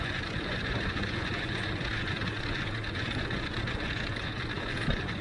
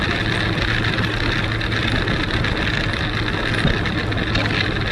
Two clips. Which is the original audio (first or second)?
second